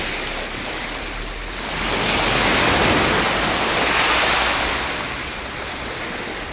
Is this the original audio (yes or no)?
yes